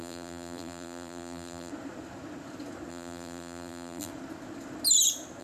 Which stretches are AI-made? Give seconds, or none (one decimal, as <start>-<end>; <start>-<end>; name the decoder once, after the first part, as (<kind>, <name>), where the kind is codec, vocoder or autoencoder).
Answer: 0.0-1.7 (vocoder, BigVGAN v2); 2.9-4.1